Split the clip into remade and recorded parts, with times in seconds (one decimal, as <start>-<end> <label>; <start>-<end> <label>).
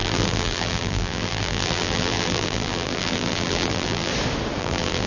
0.0-4.1 remade; 4.1-4.6 recorded; 4.6-5.1 remade